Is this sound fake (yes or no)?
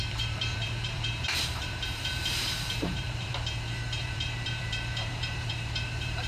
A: yes